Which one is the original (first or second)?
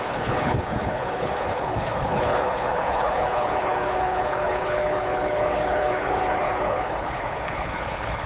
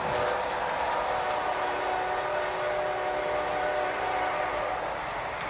second